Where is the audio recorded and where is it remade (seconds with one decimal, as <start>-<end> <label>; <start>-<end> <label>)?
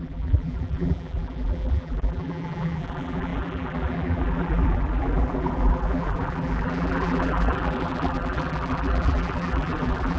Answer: 0.0-10.2 remade